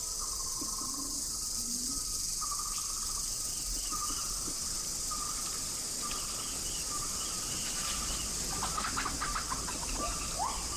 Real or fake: real